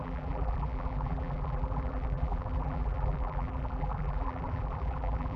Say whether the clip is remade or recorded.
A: remade